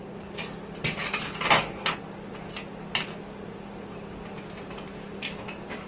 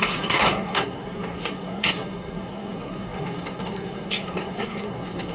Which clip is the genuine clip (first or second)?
first